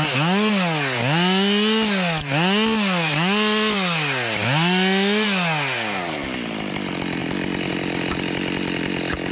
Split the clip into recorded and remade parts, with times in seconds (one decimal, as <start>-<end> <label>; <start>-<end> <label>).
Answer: 0.0-9.3 recorded